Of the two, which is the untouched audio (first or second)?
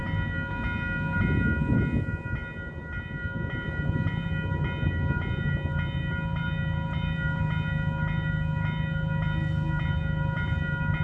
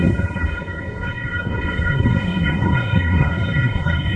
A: first